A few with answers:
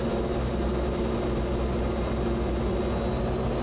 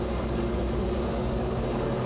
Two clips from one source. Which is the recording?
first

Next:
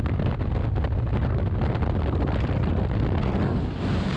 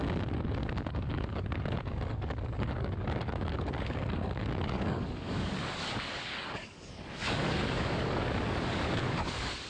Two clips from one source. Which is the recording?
first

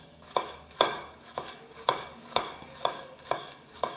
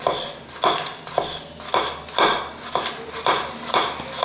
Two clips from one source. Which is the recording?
second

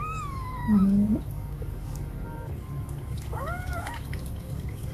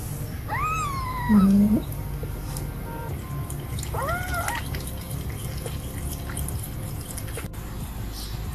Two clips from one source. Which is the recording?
second